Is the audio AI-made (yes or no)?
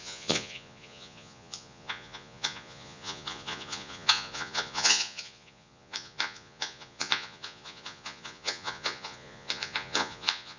yes